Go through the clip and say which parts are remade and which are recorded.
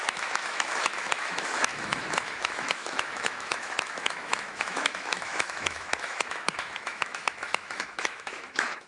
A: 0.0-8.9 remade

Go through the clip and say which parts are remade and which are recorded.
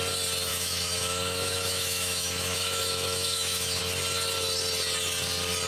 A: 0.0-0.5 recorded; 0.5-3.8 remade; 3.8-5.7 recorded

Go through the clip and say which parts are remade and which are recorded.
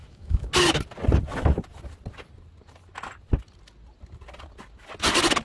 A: 0.0-0.5 remade; 0.5-5.4 recorded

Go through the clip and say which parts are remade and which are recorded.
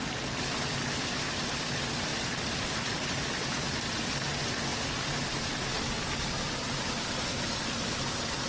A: 0.0-8.5 recorded